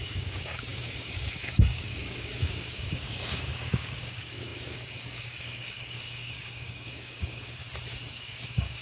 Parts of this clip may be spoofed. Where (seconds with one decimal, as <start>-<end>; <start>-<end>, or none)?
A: 0.0-7.6; 8.1-8.8